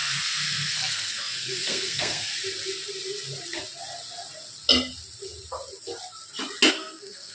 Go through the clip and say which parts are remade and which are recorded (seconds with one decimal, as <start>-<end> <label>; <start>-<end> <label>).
0.0-2.3 remade; 2.3-6.7 recorded; 6.7-7.3 remade